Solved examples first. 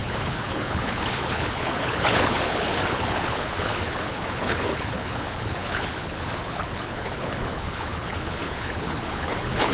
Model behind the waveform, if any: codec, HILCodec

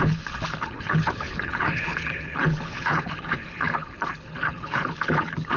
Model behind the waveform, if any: codec, HILCodec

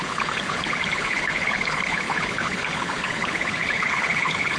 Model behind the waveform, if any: codec, HILCodec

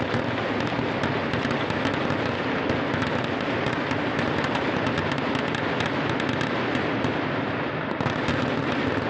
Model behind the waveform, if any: none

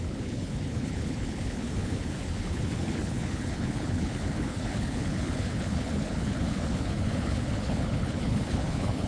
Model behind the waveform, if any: codec, HILCodec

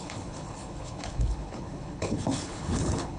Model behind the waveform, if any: codec, HILCodec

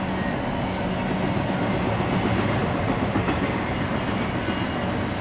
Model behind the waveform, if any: none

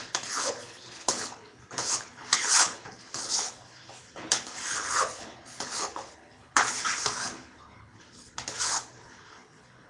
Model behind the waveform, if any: codec, HILCodec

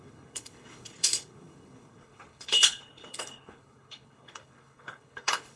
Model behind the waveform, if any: codec, HILCodec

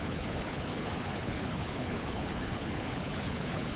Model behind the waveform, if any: codec, HILCodec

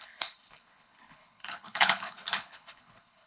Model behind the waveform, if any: codec, HILCodec